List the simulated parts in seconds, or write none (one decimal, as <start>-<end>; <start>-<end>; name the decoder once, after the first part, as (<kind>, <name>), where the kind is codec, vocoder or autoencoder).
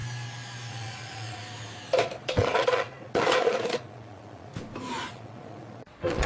0.7-1.4 (vocoder, Vocos); 2.2-4.5; 5.1-6.3